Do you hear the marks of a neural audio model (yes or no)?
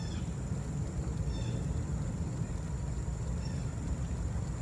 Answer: no